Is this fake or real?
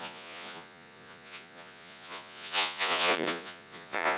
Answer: fake